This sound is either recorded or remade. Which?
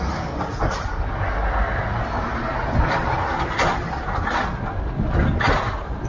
recorded